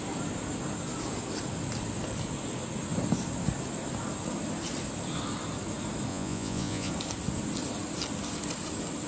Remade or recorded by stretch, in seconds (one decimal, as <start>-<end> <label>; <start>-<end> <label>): 0.0-6.1 recorded; 6.1-6.9 remade; 6.9-9.1 recorded